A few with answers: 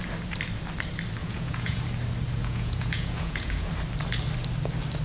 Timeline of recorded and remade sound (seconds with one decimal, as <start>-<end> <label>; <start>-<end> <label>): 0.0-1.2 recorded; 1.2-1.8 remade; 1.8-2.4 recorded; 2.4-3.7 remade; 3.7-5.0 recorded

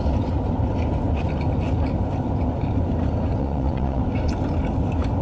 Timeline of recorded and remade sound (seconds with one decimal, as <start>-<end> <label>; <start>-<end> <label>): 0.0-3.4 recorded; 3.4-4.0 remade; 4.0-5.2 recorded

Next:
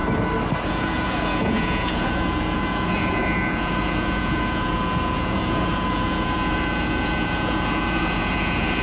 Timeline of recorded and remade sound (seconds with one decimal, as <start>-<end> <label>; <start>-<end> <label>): 0.0-0.6 recorded; 0.6-8.8 remade